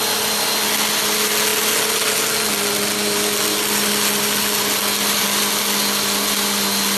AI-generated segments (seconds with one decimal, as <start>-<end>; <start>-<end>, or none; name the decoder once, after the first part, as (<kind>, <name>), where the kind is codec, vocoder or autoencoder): none